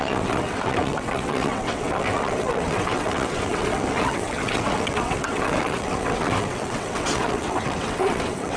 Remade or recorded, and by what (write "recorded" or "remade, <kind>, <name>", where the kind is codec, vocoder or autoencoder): remade, vocoder, WaveNeXt